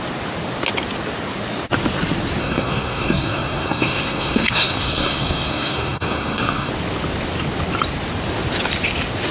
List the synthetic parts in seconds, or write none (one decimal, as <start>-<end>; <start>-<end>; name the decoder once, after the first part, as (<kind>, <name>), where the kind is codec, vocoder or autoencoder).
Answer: 2.4-6.7 (codec, SNAC)